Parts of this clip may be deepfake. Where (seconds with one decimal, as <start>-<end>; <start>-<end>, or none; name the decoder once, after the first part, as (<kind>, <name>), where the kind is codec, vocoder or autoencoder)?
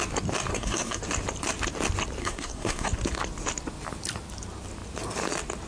0.5-1.0 (codec, SNAC); 2.2-2.9